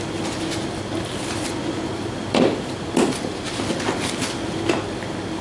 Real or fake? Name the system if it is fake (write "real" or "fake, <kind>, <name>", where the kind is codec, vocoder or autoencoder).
real